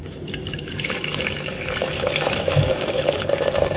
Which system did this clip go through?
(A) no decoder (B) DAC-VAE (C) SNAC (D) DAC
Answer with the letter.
D